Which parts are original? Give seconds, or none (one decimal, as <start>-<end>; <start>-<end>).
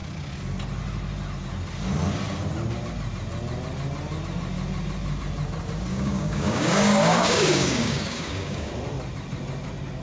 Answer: 0.0-5.9; 8.7-10.0